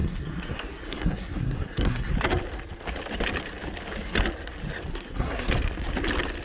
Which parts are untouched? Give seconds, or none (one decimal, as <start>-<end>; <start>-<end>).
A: 2.1-4.9; 5.5-6.4